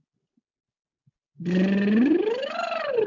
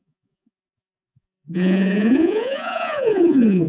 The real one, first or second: first